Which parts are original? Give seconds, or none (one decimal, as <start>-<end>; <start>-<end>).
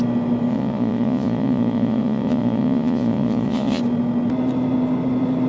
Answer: 0.0-0.5; 3.8-5.5